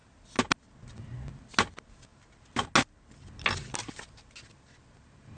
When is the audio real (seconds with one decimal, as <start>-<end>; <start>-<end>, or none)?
0.0-5.4